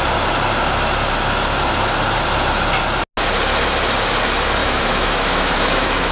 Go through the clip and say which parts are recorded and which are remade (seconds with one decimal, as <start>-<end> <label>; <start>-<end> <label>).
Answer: 0.0-4.6 recorded; 4.6-6.1 remade